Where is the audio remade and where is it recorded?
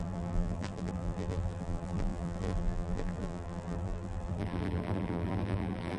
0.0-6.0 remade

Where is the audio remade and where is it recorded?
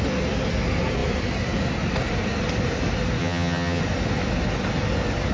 0.0-3.2 recorded; 3.2-3.8 remade; 3.8-5.3 recorded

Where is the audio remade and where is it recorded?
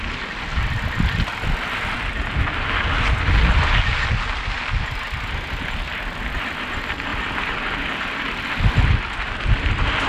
0.0-7.1 recorded; 7.1-8.8 remade; 8.8-10.1 recorded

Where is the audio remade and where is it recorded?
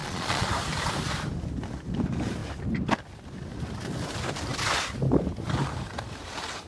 0.0-0.5 remade; 0.5-6.7 recorded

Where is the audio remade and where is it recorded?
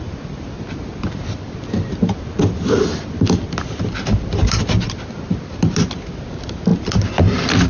0.0-7.7 recorded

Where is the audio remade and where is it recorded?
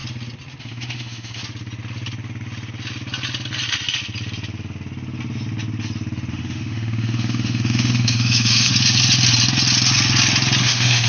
0.0-0.6 recorded; 0.6-1.4 remade; 1.4-6.3 recorded; 6.3-8.7 remade; 8.7-10.6 recorded; 10.6-11.1 remade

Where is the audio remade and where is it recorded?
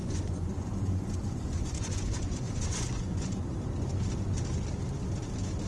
0.0-3.4 remade; 3.4-5.7 recorded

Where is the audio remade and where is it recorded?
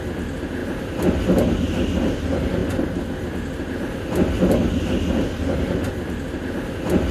0.0-7.1 recorded